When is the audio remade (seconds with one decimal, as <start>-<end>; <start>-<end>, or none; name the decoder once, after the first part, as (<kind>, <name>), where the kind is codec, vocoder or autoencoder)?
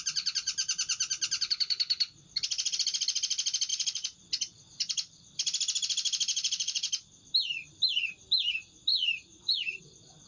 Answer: 3.7-4.2 (vocoder, Vocos); 6.3-6.9; 8.9-9.8